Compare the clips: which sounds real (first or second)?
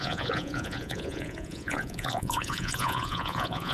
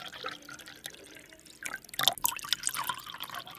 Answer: second